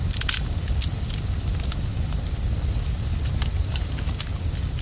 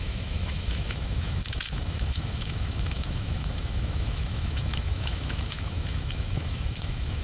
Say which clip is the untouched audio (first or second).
first